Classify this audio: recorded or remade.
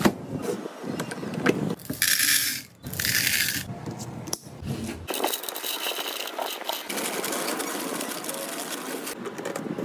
recorded